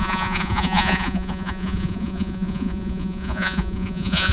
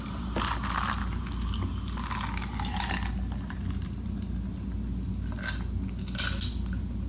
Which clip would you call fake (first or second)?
first